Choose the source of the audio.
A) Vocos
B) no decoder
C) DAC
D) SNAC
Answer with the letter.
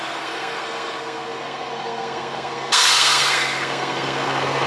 D